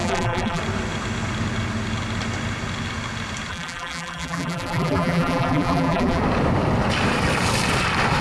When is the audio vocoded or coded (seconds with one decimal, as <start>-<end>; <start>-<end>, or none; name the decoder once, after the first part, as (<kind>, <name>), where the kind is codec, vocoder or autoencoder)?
0.0-0.6 (vocoder, BigVGAN v2); 3.5-6.2